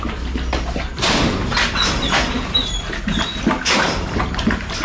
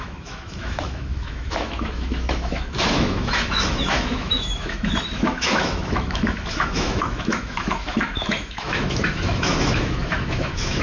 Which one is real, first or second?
first